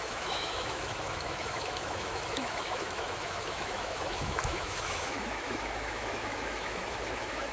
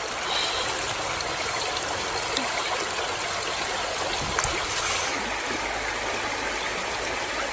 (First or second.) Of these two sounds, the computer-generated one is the first